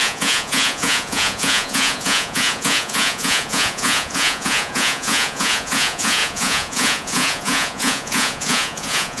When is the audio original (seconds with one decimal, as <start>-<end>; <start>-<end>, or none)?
none